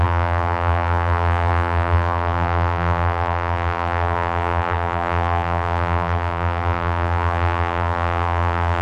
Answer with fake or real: fake